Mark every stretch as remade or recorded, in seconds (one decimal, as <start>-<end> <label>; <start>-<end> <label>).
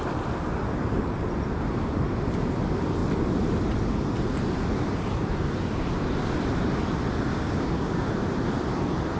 0.0-7.3 recorded; 7.3-8.1 remade; 8.1-9.2 recorded